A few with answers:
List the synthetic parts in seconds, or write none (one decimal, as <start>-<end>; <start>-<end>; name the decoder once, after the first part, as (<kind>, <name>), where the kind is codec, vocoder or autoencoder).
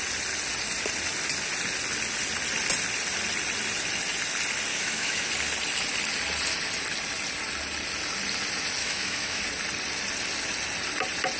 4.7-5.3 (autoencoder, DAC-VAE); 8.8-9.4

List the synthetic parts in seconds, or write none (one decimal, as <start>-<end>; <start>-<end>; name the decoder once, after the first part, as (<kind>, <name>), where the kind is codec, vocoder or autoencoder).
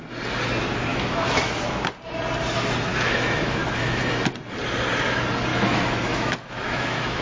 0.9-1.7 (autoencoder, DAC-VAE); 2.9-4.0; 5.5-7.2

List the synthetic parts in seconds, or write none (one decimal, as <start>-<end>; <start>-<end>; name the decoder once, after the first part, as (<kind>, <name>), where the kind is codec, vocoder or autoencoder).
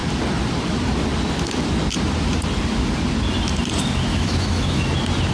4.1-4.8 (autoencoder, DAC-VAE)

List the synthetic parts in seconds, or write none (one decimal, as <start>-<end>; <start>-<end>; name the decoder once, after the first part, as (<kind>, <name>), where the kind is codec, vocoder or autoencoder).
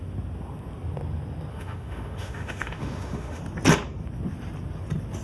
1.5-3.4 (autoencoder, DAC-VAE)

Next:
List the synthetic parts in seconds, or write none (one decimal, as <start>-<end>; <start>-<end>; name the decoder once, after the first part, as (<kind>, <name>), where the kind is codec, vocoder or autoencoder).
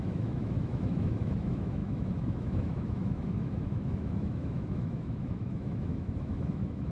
0.0-6.9 (autoencoder, DAC-VAE)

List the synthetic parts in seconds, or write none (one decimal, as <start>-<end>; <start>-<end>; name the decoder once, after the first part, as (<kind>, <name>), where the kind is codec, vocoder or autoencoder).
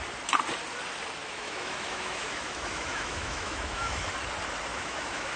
1.2-4.1 (autoencoder, DAC-VAE); 4.7-5.4